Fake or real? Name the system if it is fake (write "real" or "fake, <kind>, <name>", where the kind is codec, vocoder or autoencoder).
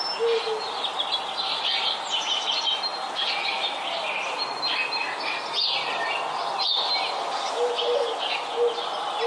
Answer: real